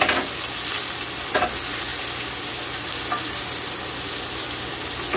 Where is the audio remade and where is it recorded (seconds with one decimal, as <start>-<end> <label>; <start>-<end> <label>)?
0.0-5.2 recorded